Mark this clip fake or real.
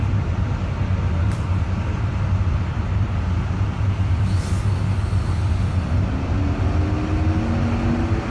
real